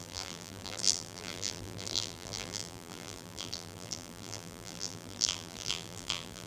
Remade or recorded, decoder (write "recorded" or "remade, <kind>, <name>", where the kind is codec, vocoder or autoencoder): remade, vocoder, BigVGAN v2